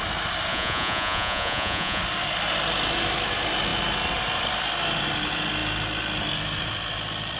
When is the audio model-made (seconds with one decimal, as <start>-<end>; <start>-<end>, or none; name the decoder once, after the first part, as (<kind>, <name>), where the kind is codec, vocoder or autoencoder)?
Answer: 0.5-2.0 (vocoder, Vocos)